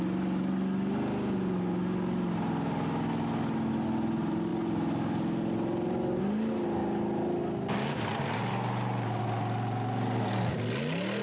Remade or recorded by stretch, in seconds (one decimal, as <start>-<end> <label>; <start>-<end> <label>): 0.0-4.5 recorded; 4.5-6.2 remade; 6.2-11.2 recorded

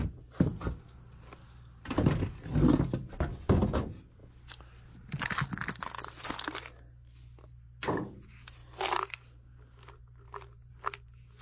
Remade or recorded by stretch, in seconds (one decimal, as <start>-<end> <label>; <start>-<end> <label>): 0.0-11.4 recorded